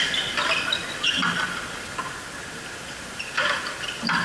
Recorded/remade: recorded